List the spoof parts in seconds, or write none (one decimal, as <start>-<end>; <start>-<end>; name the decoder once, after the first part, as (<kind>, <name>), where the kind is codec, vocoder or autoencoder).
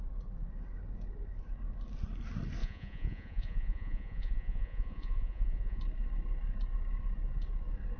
2.6-5.8 (vocoder, Vocos)